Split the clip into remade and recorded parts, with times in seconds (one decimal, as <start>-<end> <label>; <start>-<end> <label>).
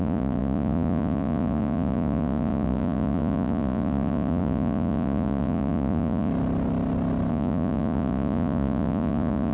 0.0-6.3 remade; 6.3-7.3 recorded; 7.3-9.5 remade